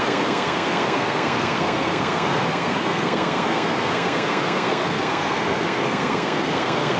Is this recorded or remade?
remade